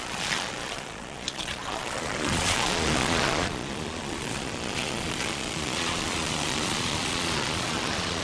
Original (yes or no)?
no